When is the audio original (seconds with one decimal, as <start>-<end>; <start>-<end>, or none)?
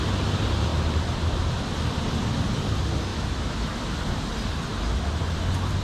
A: 0.0-3.1; 3.8-5.8